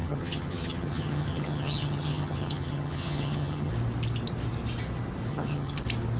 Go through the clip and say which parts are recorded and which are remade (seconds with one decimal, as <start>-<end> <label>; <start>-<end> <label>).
0.0-3.7 remade; 3.7-5.3 recorded; 5.3-5.8 remade; 5.8-6.2 recorded